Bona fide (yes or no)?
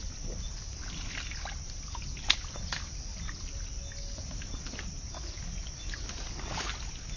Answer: yes